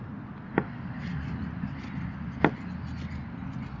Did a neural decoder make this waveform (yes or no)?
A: no